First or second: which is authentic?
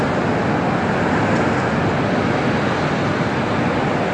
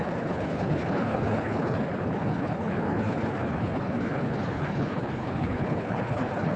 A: first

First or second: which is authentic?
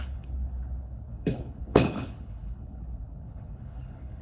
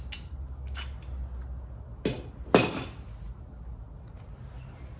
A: second